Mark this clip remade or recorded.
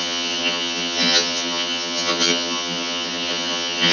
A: remade